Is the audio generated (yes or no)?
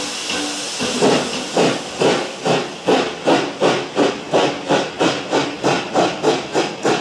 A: no